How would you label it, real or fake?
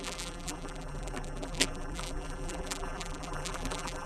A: fake